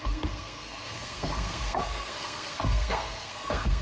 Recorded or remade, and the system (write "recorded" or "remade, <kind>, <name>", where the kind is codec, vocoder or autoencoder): remade, codec, SNAC